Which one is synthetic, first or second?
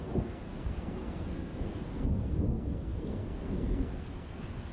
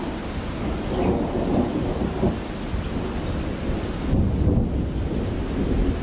first